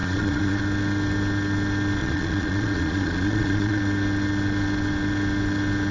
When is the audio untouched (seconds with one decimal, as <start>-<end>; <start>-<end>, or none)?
0.6-2.0; 3.8-5.9

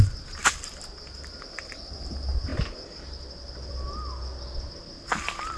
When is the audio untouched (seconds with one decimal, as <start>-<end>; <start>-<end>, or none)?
0.0-5.6

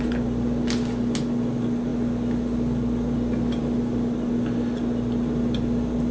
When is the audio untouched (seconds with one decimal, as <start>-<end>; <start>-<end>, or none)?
0.0-6.1

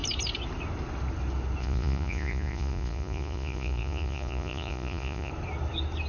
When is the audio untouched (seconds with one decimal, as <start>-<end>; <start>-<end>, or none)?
0.0-1.6; 5.3-6.1

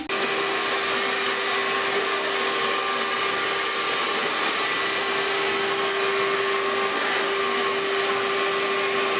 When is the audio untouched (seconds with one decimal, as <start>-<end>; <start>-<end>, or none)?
0.0-9.2

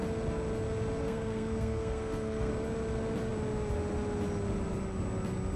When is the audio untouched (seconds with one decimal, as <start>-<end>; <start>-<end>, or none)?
0.0-1.0; 2.5-5.6

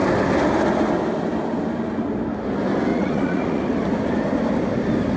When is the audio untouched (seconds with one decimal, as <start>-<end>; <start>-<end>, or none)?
0.0-2.9; 3.6-5.2